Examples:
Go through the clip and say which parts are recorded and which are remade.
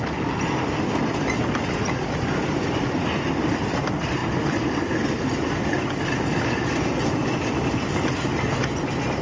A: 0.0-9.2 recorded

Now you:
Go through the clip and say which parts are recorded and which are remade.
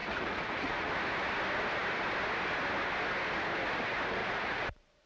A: 0.0-0.9 remade; 0.9-4.2 recorded; 4.2-5.1 remade